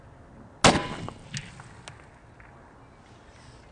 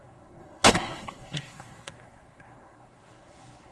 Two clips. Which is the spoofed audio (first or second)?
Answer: second